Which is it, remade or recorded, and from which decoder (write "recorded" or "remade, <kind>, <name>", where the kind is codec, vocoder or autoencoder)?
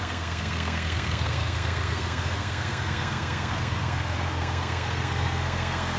remade, codec, SNAC